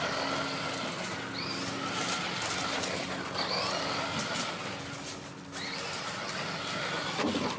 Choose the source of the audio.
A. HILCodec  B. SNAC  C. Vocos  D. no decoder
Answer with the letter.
D